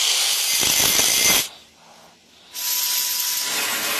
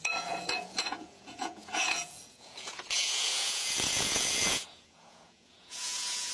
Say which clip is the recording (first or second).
first